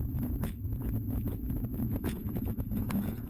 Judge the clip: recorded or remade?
remade